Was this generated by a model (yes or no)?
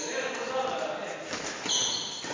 no